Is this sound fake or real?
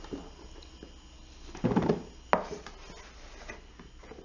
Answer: real